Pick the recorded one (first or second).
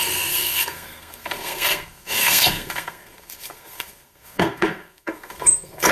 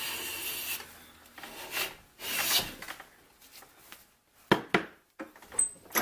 second